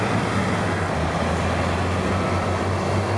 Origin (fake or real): real